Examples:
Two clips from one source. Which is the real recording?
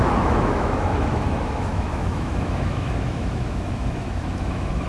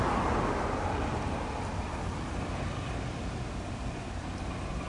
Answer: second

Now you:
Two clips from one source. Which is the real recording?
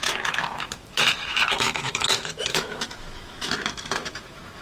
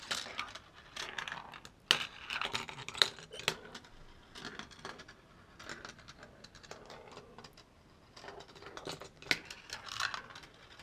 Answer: second